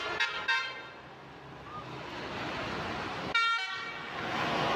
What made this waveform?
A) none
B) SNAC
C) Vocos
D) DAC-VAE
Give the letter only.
A